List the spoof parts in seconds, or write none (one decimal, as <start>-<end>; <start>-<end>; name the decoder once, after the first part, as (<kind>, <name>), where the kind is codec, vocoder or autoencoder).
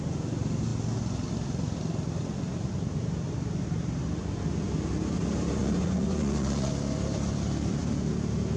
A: 5.6-6.7 (vocoder, Vocos)